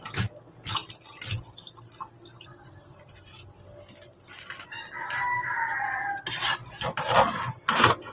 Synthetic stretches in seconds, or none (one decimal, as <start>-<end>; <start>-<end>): none